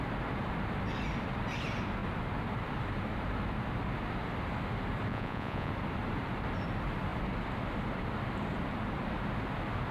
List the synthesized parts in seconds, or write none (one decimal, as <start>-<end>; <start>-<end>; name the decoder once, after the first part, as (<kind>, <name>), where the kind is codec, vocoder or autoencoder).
5.1-5.7 (vocoder, Vocos)